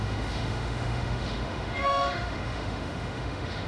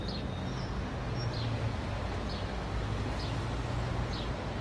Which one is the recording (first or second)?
second